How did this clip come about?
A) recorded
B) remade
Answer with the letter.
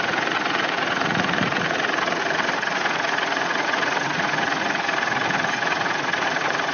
B